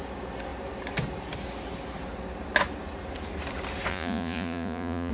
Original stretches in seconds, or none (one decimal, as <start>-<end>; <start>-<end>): 0.0-3.9